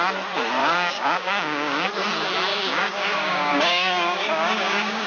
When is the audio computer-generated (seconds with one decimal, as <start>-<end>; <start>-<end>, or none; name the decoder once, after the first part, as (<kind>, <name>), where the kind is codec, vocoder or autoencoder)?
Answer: 0.6-1.9 (codec, DAC); 2.5-5.1